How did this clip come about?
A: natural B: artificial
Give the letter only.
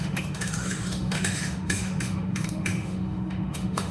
B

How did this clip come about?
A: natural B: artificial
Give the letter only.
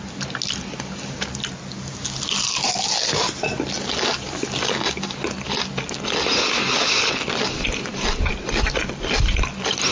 A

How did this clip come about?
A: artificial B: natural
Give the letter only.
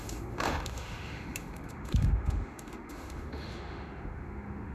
A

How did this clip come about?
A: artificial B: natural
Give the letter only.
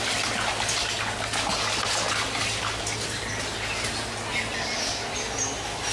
B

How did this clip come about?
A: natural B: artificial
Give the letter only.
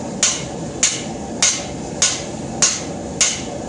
A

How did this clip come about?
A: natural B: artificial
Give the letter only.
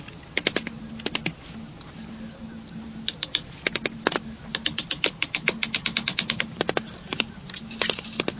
A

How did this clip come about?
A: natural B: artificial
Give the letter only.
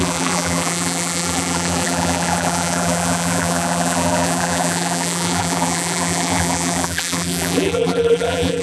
B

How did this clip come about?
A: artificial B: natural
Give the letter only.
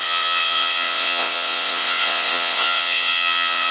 A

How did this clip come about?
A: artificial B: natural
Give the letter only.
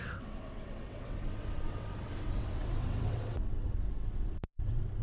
A